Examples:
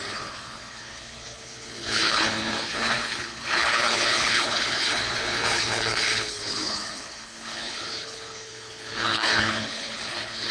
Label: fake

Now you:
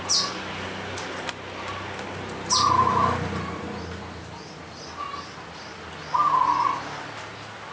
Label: real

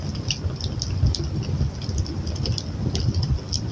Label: real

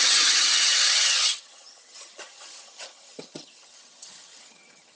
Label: fake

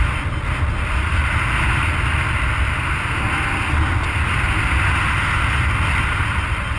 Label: real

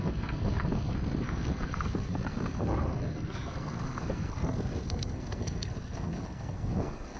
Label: fake